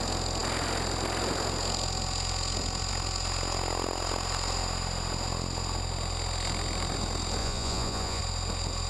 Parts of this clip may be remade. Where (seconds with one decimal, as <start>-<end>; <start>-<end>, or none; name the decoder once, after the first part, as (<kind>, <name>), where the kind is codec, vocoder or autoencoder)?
7.4-8.2 (vocoder, Vocos)